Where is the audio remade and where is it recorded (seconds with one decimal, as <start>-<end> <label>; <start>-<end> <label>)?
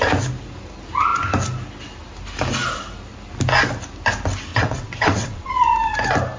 0.0-4.5 recorded; 4.5-5.5 remade; 5.5-6.4 recorded